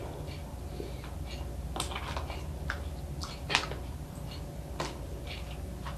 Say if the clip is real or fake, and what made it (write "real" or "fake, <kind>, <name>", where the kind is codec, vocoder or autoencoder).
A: real